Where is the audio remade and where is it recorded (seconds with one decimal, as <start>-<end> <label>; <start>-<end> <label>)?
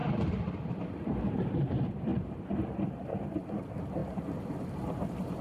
0.0-0.8 recorded; 0.8-5.4 remade